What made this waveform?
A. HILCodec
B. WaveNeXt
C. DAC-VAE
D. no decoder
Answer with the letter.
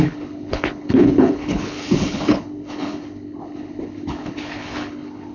A